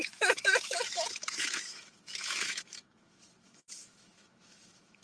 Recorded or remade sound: remade